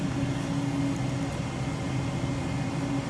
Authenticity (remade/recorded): recorded